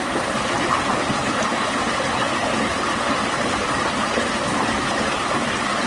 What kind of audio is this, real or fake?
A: real